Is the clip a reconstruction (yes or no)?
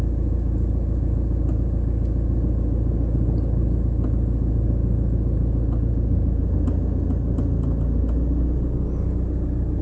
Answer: no